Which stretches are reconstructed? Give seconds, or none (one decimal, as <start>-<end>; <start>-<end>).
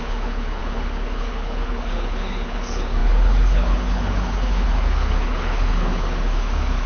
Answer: 0.0-6.9